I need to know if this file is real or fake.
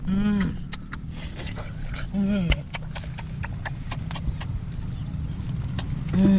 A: real